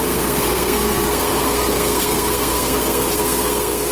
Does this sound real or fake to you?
fake